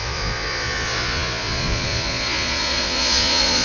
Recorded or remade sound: remade